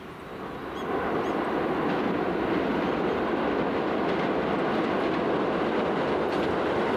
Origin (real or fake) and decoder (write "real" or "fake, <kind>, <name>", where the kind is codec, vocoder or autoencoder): real